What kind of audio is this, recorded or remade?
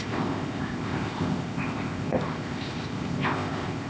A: remade